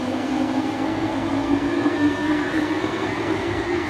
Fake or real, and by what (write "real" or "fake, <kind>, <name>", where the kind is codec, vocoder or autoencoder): fake, codec, SNAC